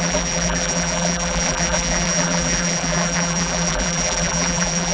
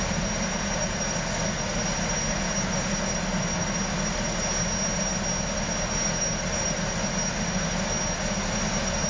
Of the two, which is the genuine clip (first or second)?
second